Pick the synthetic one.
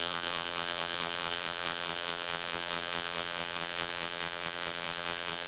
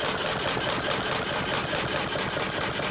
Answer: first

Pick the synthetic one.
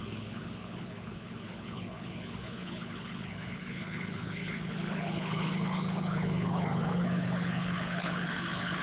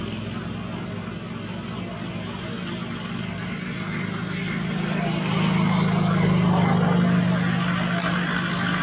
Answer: first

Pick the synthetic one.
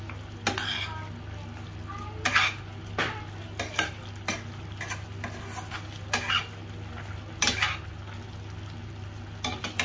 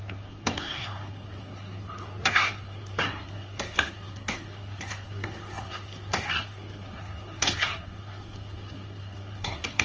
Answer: second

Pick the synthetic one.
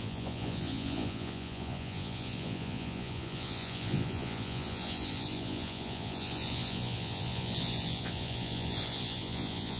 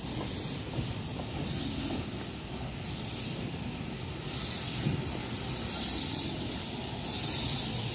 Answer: first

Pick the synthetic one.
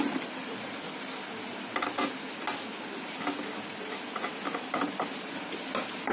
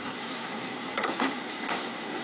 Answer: second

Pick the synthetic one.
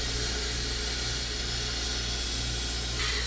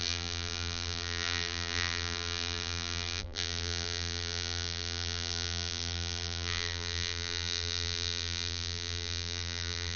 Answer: second